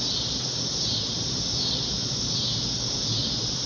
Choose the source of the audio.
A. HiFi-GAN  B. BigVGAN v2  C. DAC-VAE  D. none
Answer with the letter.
D